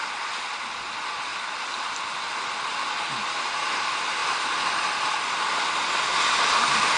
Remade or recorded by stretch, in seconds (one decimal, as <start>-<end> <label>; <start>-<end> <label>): 0.0-7.0 recorded